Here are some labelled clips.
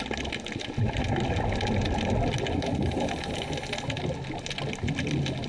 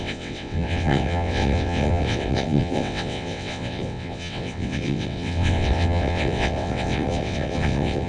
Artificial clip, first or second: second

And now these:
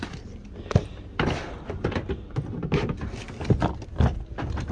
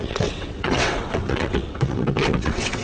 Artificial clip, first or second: second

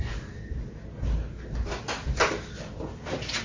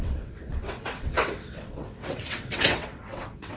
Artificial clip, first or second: second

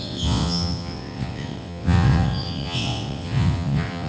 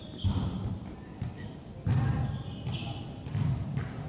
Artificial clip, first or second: first